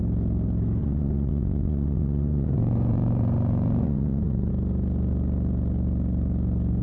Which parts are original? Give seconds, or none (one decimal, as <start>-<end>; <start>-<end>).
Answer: 0.0-0.8; 4.5-6.8